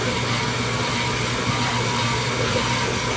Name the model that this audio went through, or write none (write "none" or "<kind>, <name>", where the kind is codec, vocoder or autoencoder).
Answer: none